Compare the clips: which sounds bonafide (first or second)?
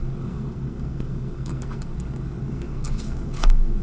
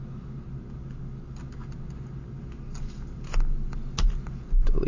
second